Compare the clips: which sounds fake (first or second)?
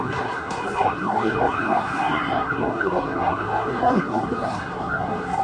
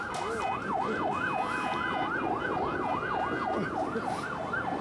first